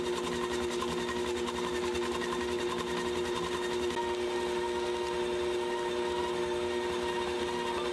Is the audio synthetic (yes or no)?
no